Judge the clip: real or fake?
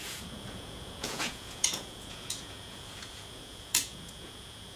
fake